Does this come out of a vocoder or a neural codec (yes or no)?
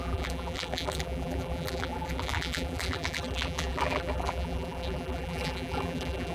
yes